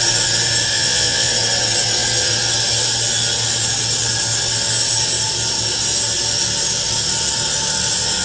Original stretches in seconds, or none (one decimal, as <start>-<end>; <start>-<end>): 0.0-0.7; 1.3-8.2